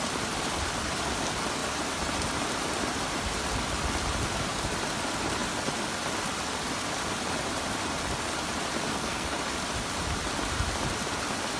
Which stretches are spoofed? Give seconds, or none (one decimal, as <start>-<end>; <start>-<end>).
8.9-9.4